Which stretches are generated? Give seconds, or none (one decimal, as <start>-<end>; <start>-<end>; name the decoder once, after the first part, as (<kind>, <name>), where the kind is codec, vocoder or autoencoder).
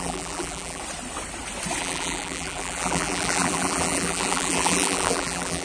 0.0-0.8 (vocoder, BigVGAN v2); 1.8-5.6